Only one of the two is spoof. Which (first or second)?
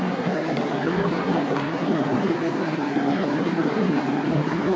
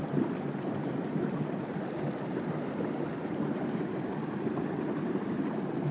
first